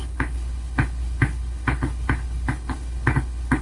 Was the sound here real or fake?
fake